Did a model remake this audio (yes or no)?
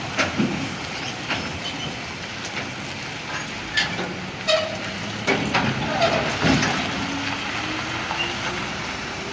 no